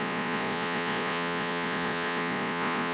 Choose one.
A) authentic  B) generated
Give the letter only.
B